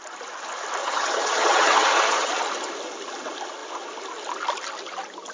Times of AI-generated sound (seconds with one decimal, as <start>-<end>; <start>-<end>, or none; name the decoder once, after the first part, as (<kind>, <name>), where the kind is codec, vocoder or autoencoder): 0.8-2.3 (vocoder, HiFi-GAN)